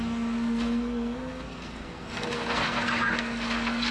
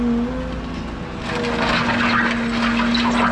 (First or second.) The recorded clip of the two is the second